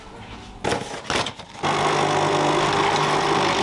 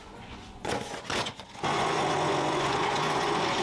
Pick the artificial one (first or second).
second